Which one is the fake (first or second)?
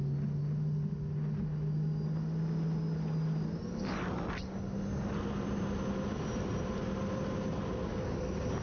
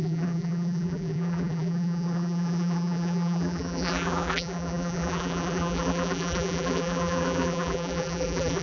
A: second